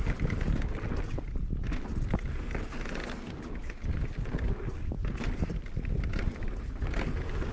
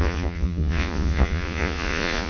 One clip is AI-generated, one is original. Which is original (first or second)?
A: first